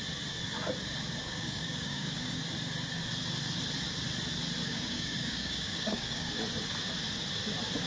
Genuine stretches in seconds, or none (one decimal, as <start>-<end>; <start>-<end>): 0.0-1.2; 2.4-4.6; 6.3-7.9